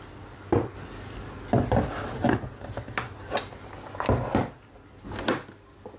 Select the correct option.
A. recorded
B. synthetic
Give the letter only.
A